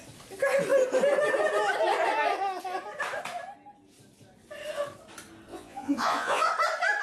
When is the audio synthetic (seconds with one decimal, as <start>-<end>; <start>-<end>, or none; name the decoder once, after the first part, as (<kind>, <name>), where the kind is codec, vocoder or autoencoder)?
5.5-6.5 (vocoder, Vocos)